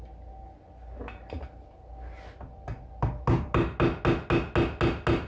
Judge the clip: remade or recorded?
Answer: recorded